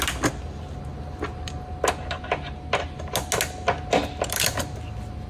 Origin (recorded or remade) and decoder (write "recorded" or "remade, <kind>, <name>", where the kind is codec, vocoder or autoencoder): recorded